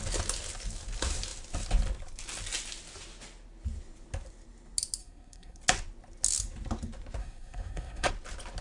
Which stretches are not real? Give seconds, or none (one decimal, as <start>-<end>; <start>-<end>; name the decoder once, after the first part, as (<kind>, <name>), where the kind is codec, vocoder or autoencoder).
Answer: 5.0-5.6 (codec, SNAC); 7.2-8.1